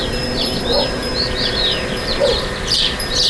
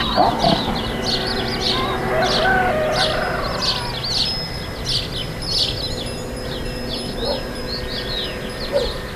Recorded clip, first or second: second